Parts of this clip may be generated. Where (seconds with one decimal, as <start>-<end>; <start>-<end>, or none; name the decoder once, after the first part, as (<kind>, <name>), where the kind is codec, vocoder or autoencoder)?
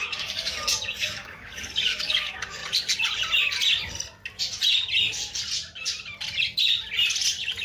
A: 0.0-2.6 (codec, DAC)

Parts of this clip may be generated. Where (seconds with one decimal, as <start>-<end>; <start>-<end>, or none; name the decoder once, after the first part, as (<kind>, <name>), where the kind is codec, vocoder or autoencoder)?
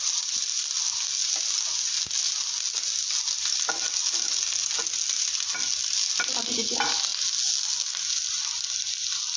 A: none